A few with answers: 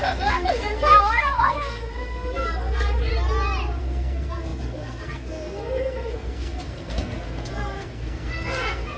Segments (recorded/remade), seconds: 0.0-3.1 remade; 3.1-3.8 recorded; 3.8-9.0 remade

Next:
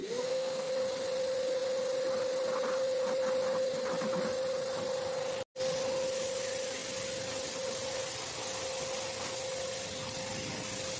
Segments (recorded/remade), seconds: 0.0-0.7 remade; 0.7-11.0 recorded

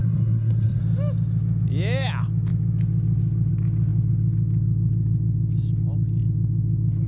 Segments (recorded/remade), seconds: 0.0-0.8 remade; 0.8-7.1 recorded

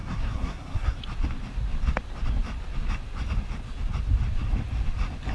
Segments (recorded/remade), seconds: 0.0-1.0 remade; 1.0-5.3 recorded

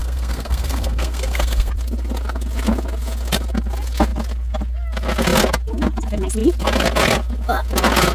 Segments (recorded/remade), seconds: 0.0-1.7 remade; 1.7-8.1 recorded